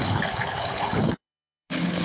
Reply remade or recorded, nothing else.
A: remade